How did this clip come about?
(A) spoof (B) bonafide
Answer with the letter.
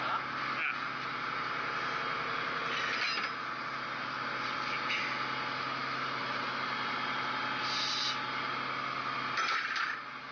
B